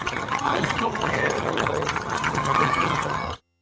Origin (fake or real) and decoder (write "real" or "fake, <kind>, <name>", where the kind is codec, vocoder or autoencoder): fake, vocoder, HiFi-GAN